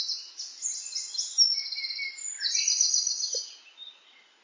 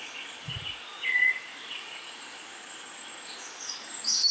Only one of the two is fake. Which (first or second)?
second